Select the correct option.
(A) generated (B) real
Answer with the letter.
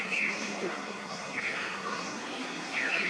A